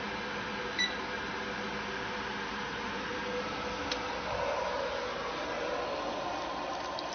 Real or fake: real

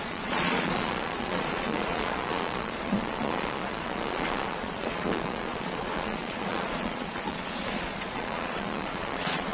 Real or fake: fake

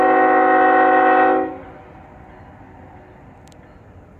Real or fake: real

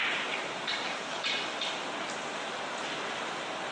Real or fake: real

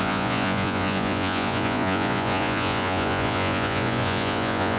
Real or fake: fake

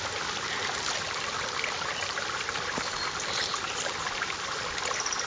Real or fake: real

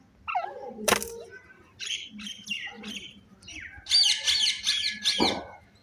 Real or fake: real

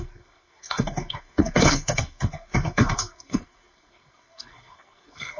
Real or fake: fake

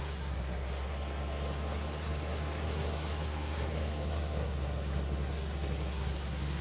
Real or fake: fake